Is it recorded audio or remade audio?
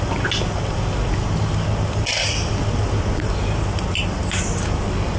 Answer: recorded